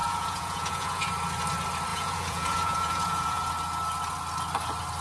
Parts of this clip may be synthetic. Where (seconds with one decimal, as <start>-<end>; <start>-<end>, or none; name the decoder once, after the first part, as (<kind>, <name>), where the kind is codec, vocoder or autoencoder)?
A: 0.0-1.1 (vocoder, Vocos); 1.9-3.5